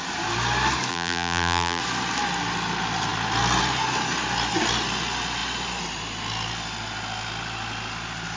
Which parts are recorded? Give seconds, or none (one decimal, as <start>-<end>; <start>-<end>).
0.0-0.9; 1.8-8.4